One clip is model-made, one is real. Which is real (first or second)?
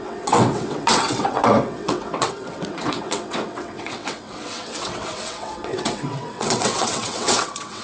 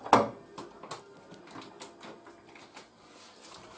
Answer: second